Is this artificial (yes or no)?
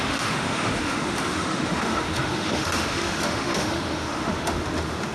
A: yes